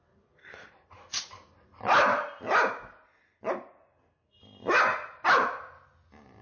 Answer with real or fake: real